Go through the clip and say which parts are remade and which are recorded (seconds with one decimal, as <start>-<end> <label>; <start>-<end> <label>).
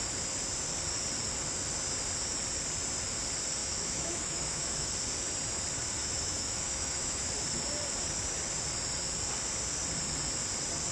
0.0-3.6 recorded; 3.6-4.9 remade; 4.9-6.0 recorded; 6.0-7.3 remade; 7.3-10.9 recorded